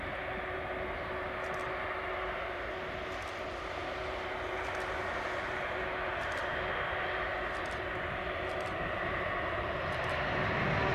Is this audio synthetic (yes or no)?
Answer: no